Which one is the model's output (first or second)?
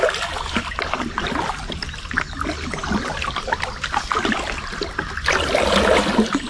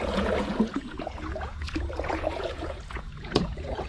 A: second